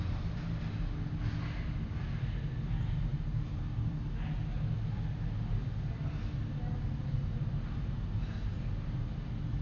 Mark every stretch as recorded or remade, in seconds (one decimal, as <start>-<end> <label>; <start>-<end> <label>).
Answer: 0.0-9.6 recorded